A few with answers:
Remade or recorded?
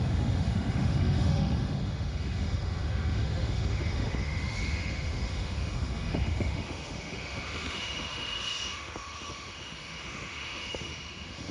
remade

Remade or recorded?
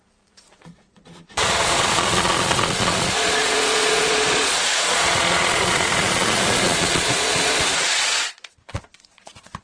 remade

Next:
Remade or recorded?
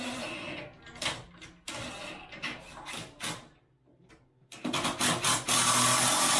recorded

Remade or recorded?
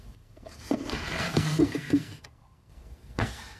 remade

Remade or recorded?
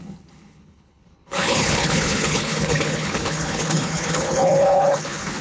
remade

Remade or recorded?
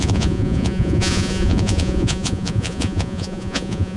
remade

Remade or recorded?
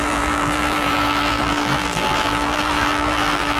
remade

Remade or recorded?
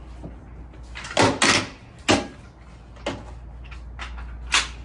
recorded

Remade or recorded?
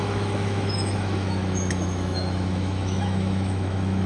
remade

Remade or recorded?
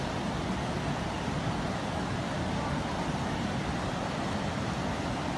recorded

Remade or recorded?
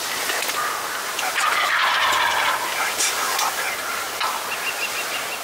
recorded